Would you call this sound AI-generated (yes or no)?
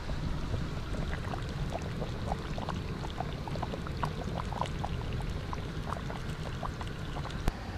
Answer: no